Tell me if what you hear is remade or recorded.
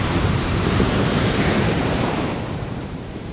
remade